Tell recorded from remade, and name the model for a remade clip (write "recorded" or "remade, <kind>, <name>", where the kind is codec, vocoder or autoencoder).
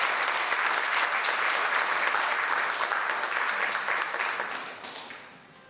recorded